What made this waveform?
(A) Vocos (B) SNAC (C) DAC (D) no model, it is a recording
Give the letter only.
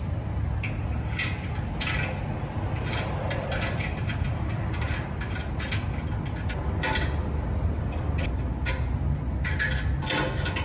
D